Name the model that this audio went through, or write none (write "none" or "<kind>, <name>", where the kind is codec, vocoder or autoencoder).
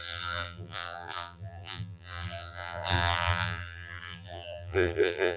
vocoder, BigVGAN v2